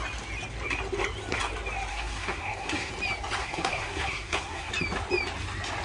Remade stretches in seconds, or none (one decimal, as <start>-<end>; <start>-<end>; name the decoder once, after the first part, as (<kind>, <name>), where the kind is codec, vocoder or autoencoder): 1.9-2.9 (codec, SNAC); 3.4-4.7